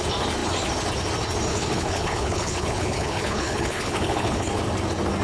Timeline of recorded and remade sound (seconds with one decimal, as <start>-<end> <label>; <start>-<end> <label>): 0.0-1.5 recorded; 1.5-4.6 remade; 4.6-5.2 recorded